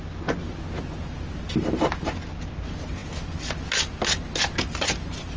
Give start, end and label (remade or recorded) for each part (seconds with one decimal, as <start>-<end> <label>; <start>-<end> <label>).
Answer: 0.0-5.4 recorded